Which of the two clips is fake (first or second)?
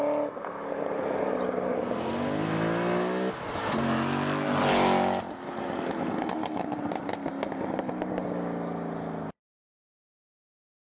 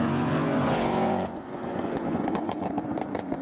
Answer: second